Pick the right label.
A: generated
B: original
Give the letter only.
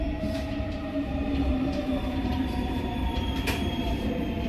A